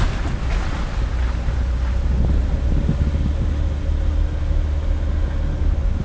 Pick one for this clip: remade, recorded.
recorded